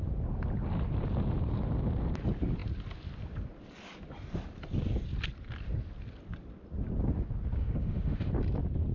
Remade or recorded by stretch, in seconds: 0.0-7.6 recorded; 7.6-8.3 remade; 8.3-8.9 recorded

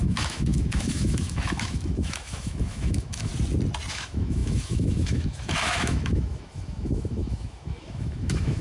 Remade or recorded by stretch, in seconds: 0.0-3.3 remade; 3.3-3.9 recorded; 3.9-8.6 remade

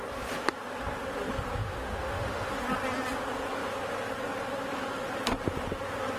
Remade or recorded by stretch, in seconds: 0.0-1.6 recorded; 1.6-2.5 remade; 2.5-6.2 recorded

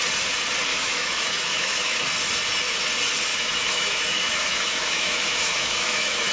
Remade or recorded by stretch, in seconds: 0.0-0.7 recorded; 0.7-2.0 remade; 2.0-3.3 recorded; 3.3-6.3 remade

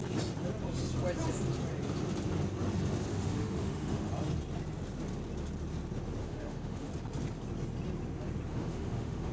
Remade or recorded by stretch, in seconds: 0.0-3.1 recorded; 3.1-4.1 remade; 4.1-6.2 recorded; 6.2-6.9 remade; 6.9-8.5 recorded; 8.5-9.3 remade